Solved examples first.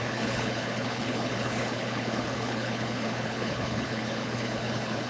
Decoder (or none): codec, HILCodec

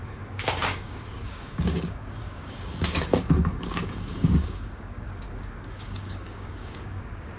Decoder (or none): codec, DAC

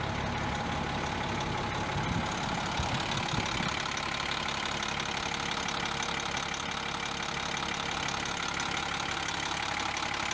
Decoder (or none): none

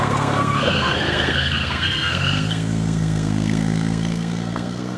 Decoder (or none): codec, SNAC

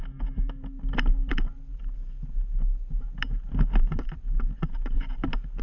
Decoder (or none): none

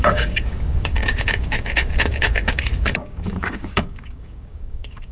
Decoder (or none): codec, DAC